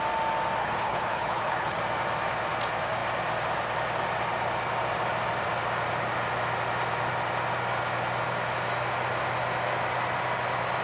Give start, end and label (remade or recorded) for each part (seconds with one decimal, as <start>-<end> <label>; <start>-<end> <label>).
0.0-0.6 recorded; 0.6-1.8 remade; 1.8-10.8 recorded